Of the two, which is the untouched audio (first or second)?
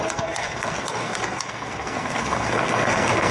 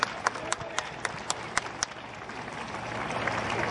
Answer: second